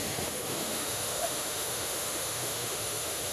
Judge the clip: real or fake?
fake